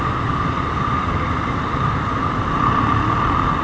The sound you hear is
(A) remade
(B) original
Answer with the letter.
B